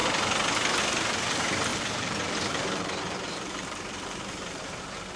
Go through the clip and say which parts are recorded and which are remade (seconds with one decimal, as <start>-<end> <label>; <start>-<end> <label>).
0.0-1.7 recorded; 1.7-4.8 remade; 4.8-5.2 recorded